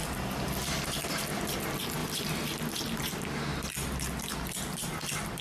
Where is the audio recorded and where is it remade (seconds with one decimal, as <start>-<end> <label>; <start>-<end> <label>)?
0.0-1.1 remade; 1.1-2.0 recorded; 2.0-2.7 remade; 2.7-3.5 recorded; 3.5-4.0 remade; 4.0-5.4 recorded